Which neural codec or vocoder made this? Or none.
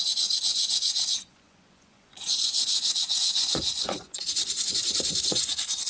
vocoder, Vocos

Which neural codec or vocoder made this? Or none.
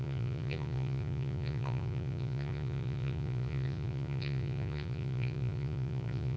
vocoder, Vocos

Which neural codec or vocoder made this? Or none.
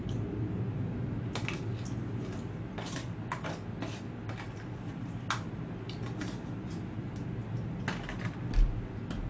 none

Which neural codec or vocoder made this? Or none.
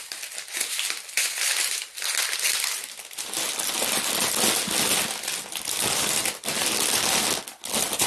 none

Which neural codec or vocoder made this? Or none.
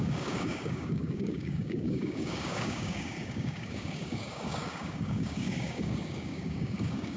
codec, DAC